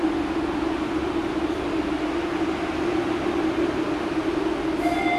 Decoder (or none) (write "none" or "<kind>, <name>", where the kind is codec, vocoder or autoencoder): none